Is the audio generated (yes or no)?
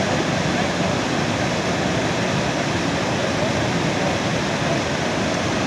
no